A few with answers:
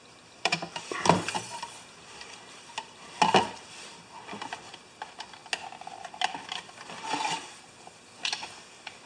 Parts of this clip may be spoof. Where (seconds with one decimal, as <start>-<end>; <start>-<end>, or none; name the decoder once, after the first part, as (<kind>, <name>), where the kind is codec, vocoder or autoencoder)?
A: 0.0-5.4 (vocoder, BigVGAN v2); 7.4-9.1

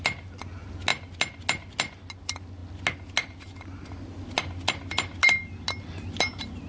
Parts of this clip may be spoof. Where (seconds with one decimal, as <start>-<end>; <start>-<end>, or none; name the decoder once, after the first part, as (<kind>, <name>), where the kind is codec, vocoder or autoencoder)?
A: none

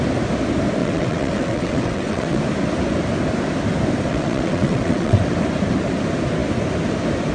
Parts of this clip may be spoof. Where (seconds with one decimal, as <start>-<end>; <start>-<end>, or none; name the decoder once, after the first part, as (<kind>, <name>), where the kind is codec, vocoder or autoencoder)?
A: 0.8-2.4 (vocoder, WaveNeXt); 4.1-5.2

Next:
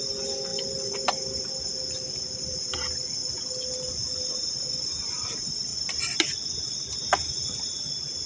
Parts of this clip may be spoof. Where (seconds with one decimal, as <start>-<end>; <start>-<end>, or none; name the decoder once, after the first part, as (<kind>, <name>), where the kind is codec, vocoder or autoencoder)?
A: none